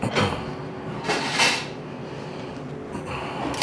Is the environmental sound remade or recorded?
recorded